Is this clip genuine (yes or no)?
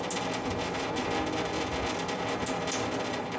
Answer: yes